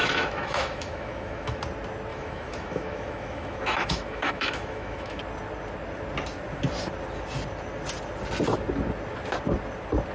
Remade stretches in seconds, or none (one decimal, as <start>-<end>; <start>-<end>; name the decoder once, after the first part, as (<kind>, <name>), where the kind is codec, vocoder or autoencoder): 0.0-1.6 (autoencoder, DAC-VAE); 2.1-5.2